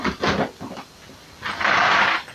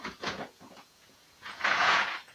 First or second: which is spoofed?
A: second